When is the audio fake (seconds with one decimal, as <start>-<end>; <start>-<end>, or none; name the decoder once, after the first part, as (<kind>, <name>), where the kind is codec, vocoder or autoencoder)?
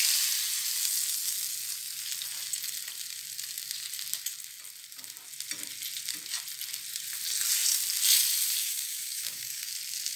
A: 8.6-9.7 (codec, DAC)